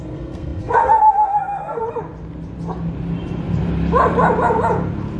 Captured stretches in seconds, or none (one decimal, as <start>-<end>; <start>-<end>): 1.8-5.2